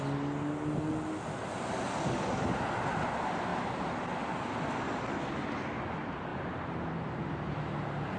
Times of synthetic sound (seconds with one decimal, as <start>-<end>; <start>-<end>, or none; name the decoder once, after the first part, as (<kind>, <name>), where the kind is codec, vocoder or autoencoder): 6.3-6.9 (vocoder, BigVGAN v2)